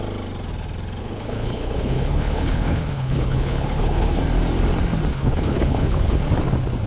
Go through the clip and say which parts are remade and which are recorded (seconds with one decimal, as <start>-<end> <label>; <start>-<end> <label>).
0.0-1.0 recorded; 1.0-4.2 remade; 4.2-5.1 recorded; 5.1-6.2 remade; 6.2-6.9 recorded